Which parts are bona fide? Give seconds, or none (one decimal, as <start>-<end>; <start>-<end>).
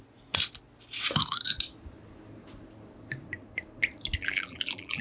0.0-4.2